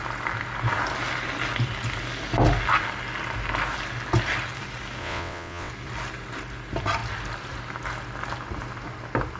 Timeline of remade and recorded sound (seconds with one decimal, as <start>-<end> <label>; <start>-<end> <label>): 0.0-5.0 recorded; 5.0-5.7 remade; 5.7-9.4 recorded